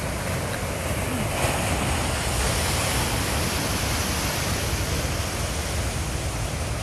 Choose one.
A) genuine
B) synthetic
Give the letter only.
A